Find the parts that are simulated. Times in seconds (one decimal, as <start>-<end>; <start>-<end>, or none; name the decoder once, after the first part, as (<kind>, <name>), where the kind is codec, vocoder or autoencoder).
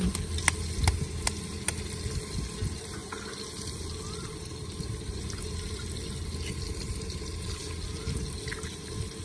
none